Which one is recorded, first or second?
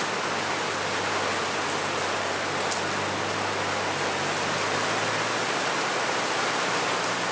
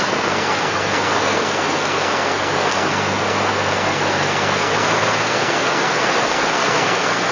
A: first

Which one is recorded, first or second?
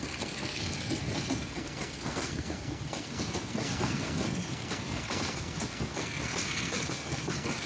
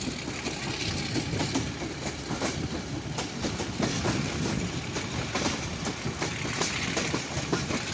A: second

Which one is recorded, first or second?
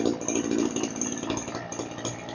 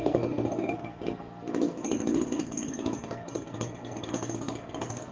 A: first